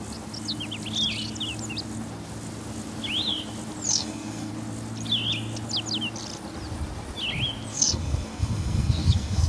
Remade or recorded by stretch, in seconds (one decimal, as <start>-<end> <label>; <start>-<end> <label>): 0.0-3.9 recorded; 3.9-4.5 remade; 4.5-7.7 recorded; 7.7-9.5 remade